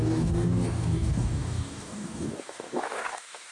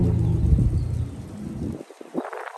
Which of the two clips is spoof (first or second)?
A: first